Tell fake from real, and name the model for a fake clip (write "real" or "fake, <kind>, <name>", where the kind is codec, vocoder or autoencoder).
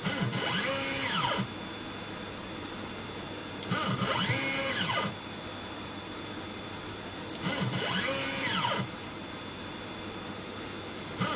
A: real